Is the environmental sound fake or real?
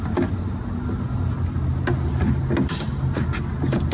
real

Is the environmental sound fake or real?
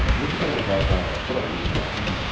fake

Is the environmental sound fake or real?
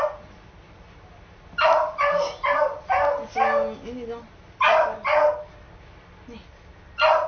real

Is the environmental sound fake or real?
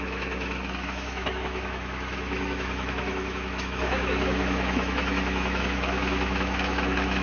fake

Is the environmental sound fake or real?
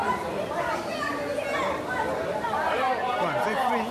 real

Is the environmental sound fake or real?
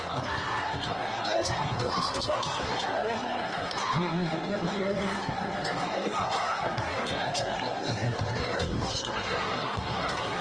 fake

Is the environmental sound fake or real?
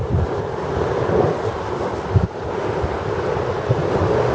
real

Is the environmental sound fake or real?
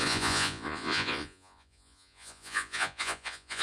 fake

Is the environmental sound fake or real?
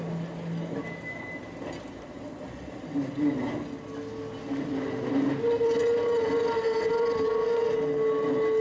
real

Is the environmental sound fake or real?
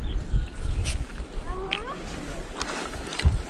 real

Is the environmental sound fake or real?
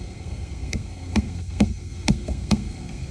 fake